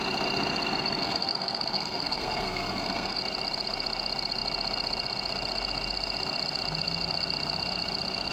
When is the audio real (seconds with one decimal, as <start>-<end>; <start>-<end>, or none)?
0.0-1.0; 3.2-8.3